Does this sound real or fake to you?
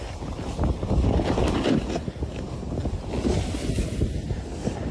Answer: real